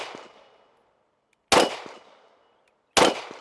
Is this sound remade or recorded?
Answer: recorded